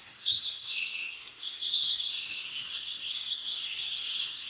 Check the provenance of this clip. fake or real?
fake